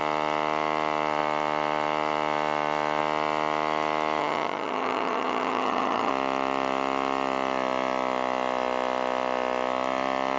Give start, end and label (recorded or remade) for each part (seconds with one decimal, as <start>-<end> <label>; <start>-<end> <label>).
0.0-4.2 recorded; 4.2-6.1 remade; 6.1-10.4 recorded